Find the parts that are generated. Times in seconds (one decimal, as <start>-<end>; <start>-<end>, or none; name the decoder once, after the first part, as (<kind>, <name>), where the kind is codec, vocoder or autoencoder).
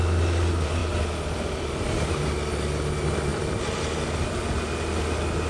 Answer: none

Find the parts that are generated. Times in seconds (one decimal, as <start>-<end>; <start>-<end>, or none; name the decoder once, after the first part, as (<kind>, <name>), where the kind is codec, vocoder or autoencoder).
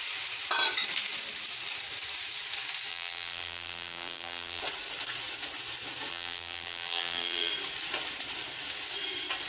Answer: 2.9-4.6 (vocoder, BigVGAN v2); 6.1-7.5